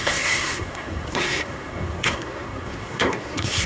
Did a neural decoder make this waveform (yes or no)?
yes